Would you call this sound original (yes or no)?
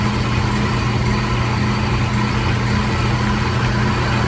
yes